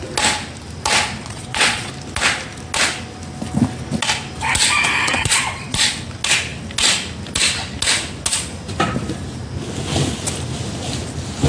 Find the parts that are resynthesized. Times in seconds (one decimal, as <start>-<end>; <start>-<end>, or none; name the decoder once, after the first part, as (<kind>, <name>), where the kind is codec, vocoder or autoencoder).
1.2-1.9 (vocoder, Vocos); 5.1-5.9